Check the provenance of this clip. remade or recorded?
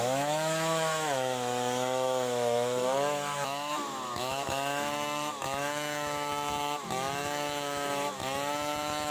remade